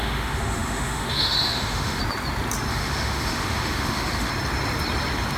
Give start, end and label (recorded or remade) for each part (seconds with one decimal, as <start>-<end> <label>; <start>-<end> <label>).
0.0-2.0 remade; 2.0-2.7 recorded; 2.7-4.3 remade; 4.3-5.4 recorded